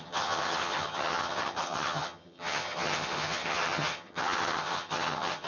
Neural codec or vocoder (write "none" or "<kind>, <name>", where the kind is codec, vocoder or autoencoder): vocoder, HiFi-GAN